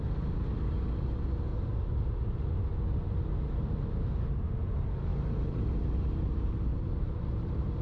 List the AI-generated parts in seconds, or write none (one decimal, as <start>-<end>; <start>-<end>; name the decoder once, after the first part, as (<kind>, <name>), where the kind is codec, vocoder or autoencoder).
1.5-2.2 (vocoder, BigVGAN v2); 5.1-5.7; 6.7-7.8